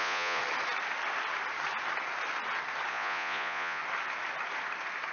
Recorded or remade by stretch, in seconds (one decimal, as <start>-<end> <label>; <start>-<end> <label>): 0.0-0.4 remade; 0.4-2.9 recorded; 2.9-3.8 remade; 3.8-5.1 recorded